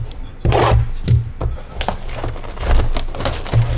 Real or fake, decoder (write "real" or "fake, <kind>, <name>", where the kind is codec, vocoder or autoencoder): real